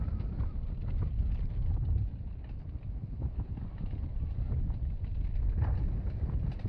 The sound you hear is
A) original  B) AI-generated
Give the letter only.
A